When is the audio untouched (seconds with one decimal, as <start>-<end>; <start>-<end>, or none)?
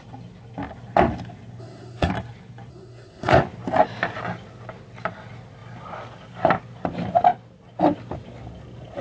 0.0-1.6; 2.1-2.7; 3.4-9.0